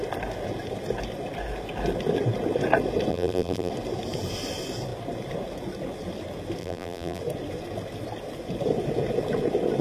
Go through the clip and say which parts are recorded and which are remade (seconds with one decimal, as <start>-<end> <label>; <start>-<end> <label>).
0.0-3.1 recorded; 3.1-3.7 remade; 3.7-6.6 recorded; 6.6-7.2 remade; 7.2-9.8 recorded